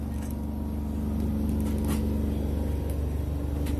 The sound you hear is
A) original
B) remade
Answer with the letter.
A